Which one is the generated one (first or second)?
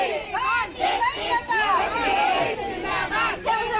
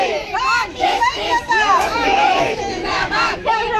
second